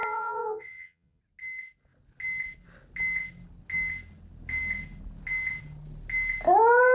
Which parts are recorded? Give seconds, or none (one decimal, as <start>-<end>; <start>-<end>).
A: 1.2-6.9